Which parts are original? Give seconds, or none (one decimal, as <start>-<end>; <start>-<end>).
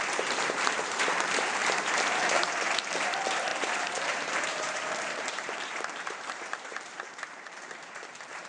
none